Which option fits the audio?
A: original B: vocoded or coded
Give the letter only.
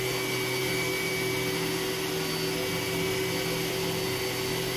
A